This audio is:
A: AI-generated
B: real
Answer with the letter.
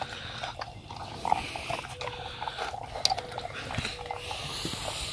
B